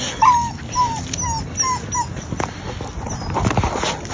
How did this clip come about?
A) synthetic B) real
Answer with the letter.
B